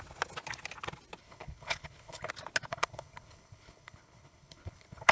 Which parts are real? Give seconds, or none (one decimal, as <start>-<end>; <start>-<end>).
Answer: 0.0-1.2; 2.3-2.7